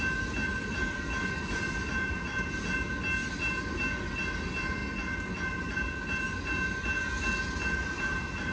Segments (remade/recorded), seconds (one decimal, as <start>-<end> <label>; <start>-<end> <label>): 0.0-8.5 recorded